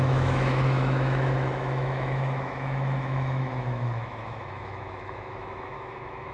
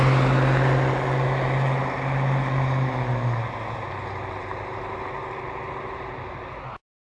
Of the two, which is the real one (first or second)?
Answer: second